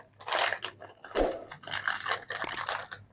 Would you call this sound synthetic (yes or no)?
no